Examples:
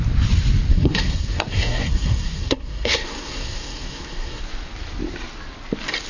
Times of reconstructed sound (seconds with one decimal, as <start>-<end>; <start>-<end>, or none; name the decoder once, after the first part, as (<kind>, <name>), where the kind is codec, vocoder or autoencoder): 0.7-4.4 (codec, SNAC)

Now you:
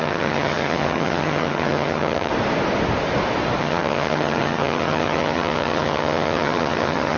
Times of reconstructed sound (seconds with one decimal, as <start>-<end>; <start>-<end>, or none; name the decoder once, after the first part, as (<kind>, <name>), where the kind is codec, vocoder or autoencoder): 0.0-2.3 (vocoder, HiFi-GAN); 3.6-7.2

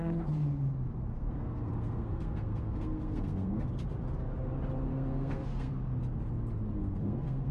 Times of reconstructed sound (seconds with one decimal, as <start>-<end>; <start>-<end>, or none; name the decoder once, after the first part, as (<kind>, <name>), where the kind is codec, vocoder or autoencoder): 1.1-3.6 (codec, SNAC); 4.9-5.7; 6.8-7.5

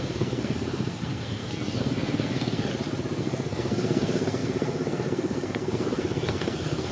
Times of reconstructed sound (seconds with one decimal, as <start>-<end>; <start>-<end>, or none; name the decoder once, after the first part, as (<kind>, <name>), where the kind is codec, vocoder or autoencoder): 0.0-2.7 (codec, SNAC); 3.2-6.9